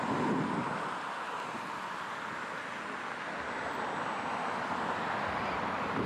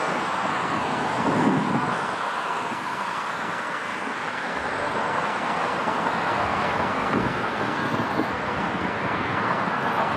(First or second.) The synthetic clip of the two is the second